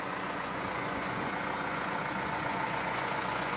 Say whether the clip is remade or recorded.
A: remade